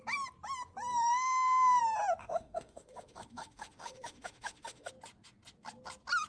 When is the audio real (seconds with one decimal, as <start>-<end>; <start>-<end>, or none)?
0.0-0.9; 1.8-2.2; 4.9-6.3